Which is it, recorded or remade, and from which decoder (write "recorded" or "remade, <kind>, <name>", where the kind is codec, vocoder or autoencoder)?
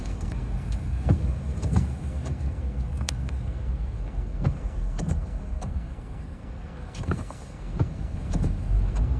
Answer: remade, codec, SNAC